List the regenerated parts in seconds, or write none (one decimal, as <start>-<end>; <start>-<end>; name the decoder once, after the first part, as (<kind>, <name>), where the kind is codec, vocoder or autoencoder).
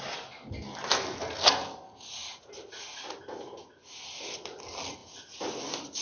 none